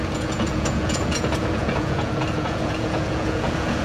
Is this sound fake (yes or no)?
yes